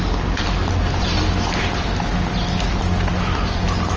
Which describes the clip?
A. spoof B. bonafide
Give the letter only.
B